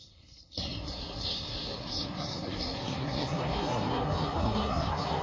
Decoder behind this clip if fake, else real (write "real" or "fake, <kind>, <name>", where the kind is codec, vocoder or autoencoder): fake, codec, SNAC